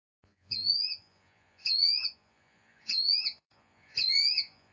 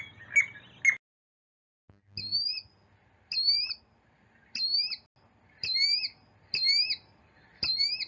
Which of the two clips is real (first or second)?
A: second